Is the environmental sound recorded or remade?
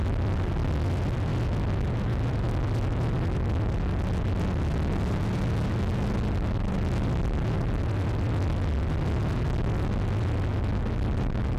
recorded